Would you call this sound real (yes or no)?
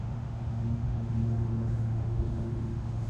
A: no